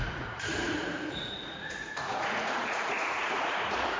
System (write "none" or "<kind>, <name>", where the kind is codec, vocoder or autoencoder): vocoder, Vocos